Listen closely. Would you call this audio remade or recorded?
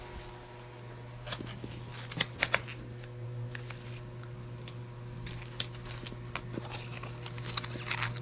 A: recorded